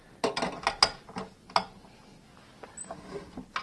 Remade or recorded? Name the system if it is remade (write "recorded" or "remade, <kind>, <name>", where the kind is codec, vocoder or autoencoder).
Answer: recorded